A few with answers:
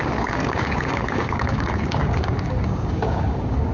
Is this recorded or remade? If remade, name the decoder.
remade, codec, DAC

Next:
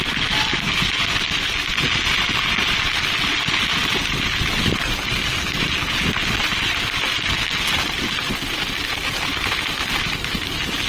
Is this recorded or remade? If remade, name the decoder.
recorded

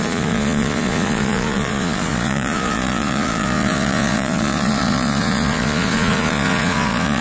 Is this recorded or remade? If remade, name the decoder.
remade, vocoder, Vocos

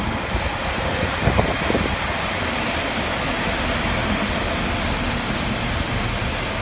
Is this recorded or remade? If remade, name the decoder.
recorded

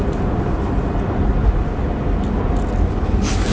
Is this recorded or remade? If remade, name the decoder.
recorded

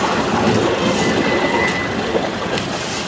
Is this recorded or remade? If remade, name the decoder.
recorded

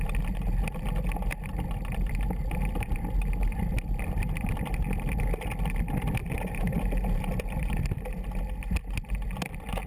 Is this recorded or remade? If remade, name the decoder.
recorded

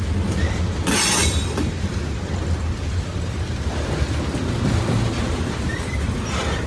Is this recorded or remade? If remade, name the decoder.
recorded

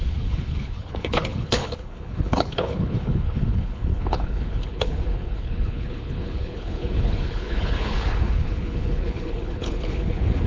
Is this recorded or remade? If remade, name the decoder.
remade, codec, HILCodec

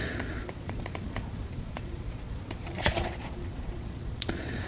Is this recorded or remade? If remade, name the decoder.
remade, vocoder, Vocos